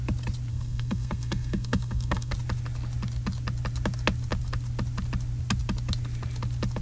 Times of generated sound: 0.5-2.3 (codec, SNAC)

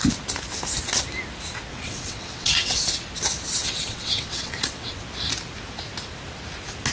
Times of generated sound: 1.7-2.8 (vocoder, WaveNeXt); 3.6-5.0

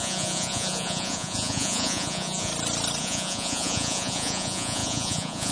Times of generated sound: 0.0-2.5 (vocoder, Vocos); 3.0-5.5

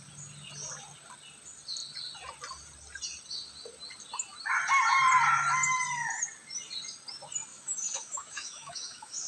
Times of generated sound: 7.5-9.3 (autoencoder, DAC-VAE)

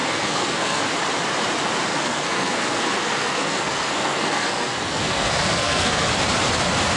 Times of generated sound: 0.0-0.8 (codec, SNAC); 1.9-6.1

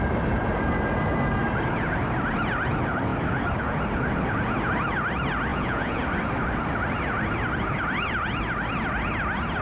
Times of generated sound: 5.5-6.0 (vocoder, Vocos)

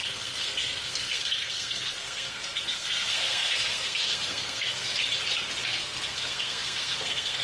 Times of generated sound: 0.0-4.9 (codec, SNAC); 5.6-7.4